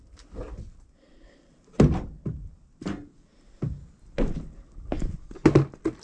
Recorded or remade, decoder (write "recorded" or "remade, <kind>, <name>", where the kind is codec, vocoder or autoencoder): recorded